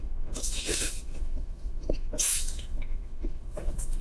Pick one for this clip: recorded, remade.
remade